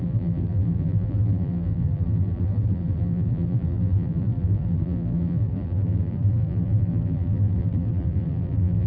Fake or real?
fake